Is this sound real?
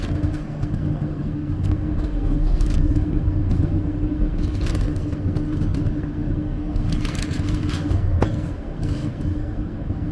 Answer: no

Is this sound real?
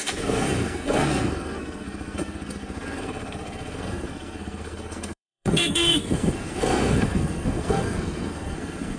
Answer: no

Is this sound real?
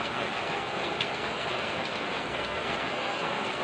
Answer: no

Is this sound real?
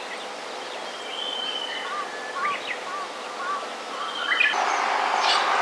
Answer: yes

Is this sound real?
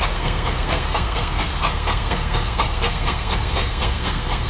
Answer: no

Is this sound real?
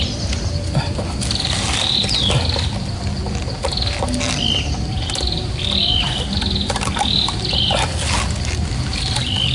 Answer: yes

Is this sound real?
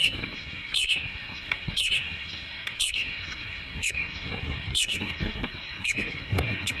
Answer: no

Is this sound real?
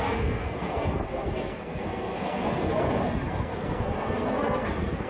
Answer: no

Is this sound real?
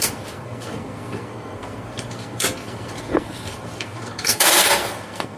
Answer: no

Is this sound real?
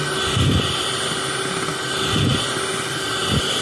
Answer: yes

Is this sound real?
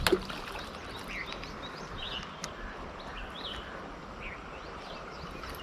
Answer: yes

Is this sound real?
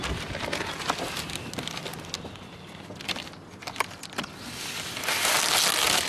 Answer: yes